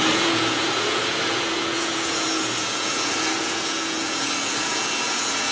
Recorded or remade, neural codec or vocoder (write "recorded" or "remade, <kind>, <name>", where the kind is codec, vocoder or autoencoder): remade, vocoder, Vocos